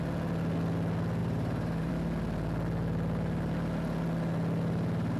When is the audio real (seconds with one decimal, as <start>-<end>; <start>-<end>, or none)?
0.0-1.2; 1.9-5.2